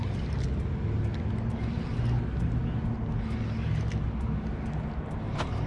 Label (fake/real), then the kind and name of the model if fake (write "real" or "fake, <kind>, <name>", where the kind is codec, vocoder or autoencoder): real